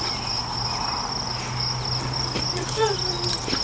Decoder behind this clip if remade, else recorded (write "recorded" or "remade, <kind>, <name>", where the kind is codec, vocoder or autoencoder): recorded